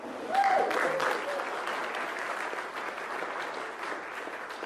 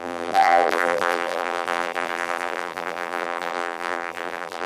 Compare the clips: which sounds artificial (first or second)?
second